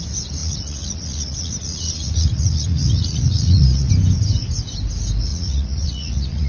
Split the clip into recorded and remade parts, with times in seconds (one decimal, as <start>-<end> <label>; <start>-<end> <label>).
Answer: 0.0-0.4 recorded; 0.4-3.9 remade; 3.9-5.3 recorded; 5.3-6.5 remade